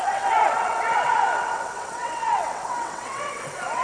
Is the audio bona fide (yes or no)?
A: no